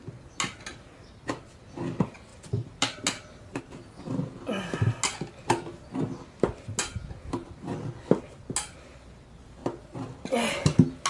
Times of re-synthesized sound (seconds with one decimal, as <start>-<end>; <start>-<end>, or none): none